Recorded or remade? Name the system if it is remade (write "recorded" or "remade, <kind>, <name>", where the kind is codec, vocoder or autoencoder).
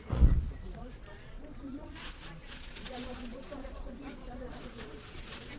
remade, vocoder, Vocos